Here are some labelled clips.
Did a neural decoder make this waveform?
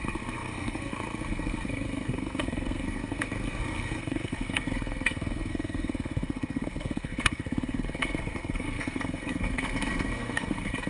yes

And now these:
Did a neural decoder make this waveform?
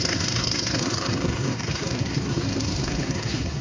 yes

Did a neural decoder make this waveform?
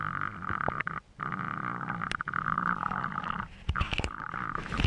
no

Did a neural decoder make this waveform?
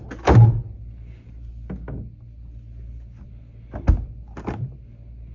no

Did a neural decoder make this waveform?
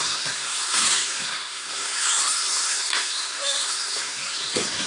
yes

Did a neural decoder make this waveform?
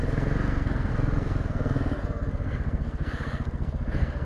yes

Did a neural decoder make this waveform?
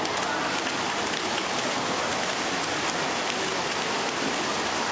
no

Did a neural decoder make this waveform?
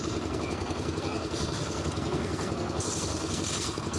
yes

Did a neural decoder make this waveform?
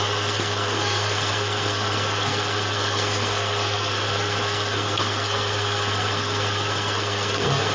yes